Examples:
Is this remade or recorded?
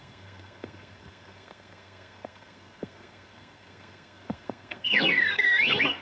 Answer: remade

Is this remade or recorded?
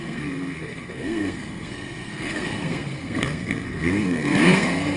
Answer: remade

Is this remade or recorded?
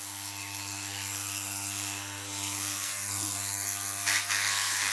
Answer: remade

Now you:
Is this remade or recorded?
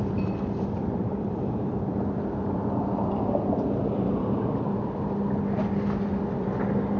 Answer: recorded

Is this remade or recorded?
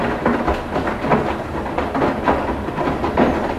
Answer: recorded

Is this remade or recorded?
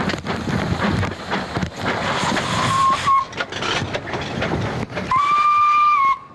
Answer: recorded